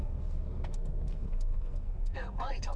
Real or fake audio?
fake